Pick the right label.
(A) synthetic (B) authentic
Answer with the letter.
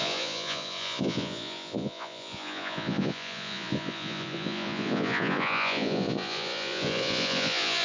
A